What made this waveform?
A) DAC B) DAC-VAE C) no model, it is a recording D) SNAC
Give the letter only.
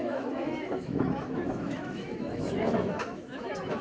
B